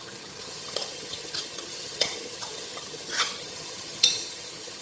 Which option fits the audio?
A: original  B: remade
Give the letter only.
B